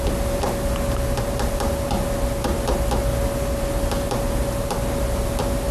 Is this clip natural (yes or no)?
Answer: yes